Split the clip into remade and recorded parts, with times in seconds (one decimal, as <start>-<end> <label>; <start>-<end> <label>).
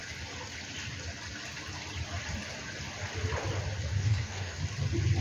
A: 0.0-4.0 recorded; 4.0-4.6 remade; 4.6-5.2 recorded